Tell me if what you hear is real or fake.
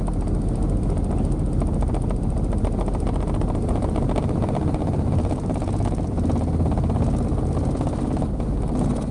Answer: real